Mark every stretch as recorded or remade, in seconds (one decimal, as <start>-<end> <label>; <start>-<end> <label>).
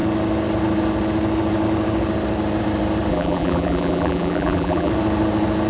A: 0.0-3.1 recorded; 3.1-4.9 remade; 4.9-5.7 recorded